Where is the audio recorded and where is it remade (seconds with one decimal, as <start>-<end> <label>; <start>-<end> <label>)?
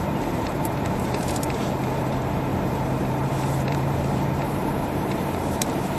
0.0-6.0 remade